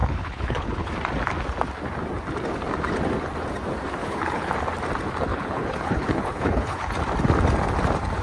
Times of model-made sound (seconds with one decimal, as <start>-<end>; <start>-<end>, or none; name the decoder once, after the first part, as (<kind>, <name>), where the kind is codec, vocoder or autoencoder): 0.0-0.9 (codec, HILCodec); 4.0-4.5; 5.3-6.9